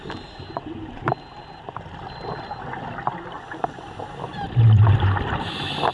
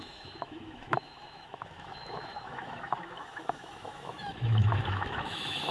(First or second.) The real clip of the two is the first